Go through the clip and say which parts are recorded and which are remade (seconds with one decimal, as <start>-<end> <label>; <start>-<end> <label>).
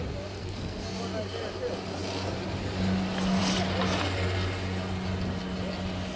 0.0-0.4 recorded; 0.4-1.0 remade; 1.0-6.2 recorded